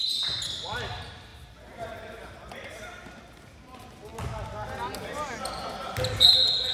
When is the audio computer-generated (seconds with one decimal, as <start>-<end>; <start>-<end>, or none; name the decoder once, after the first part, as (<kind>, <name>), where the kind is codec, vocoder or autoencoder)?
none